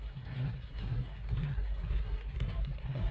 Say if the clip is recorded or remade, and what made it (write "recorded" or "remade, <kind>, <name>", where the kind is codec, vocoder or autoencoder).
remade, codec, SNAC